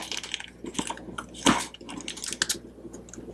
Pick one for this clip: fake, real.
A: real